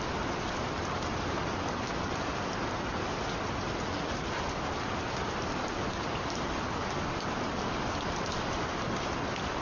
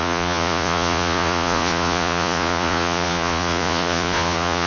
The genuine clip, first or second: first